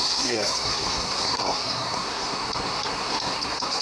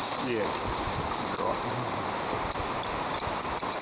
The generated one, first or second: first